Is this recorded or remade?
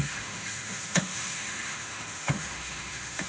remade